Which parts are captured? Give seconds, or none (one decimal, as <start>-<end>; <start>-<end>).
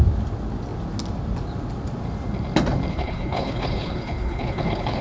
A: 0.0-2.9